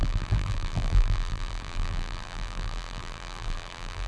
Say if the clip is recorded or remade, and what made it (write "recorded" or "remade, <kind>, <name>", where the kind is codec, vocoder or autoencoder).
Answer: remade, vocoder, BigVGAN v2